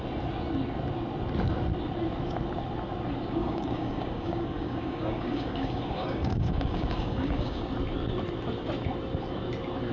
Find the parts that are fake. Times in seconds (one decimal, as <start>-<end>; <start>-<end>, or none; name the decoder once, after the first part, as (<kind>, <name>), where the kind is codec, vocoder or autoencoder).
3.4-7.6 (codec, DAC)